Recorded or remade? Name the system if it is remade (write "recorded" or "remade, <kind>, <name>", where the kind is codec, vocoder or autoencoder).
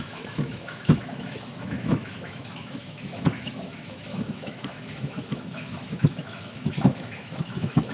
remade, autoencoder, DAC-VAE